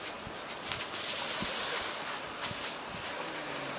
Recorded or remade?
recorded